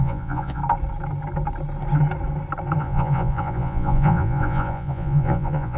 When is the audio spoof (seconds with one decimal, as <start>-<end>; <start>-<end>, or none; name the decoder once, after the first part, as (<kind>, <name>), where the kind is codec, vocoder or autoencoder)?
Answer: 0.0-0.6 (vocoder, Vocos); 2.8-5.8